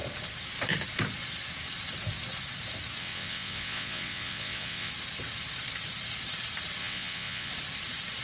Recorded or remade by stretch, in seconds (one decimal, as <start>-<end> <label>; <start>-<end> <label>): 0.0-3.0 recorded; 3.0-4.9 remade; 4.9-6.8 recorded; 6.8-7.5 remade; 7.5-8.2 recorded